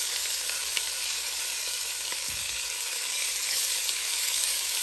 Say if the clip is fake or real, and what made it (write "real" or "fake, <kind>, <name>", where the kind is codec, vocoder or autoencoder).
fake, codec, DAC